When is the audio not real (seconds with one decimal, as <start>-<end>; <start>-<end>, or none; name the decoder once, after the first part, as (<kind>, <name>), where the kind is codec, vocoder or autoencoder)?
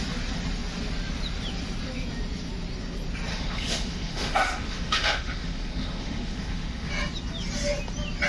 3.3-6.9 (autoencoder, DAC-VAE)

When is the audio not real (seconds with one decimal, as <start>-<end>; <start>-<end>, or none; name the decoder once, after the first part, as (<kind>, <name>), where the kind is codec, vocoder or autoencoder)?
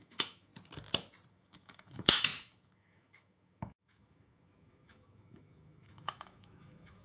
0.0-0.5 (autoencoder, DAC-VAE); 1.3-7.0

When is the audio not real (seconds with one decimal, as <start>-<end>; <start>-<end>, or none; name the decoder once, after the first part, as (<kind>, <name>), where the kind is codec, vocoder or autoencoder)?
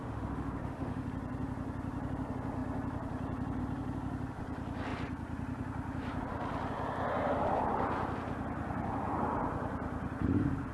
0.0-1.0 (autoencoder, DAC-VAE)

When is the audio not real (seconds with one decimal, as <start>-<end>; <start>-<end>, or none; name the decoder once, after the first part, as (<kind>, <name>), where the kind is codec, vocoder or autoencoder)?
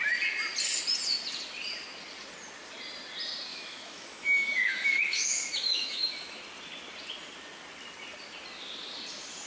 3.5-6.4 (autoencoder, DAC-VAE)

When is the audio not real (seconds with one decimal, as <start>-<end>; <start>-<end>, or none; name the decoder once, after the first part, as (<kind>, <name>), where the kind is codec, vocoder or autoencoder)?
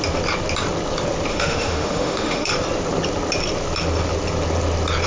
1.3-2.5 (autoencoder, DAC-VAE)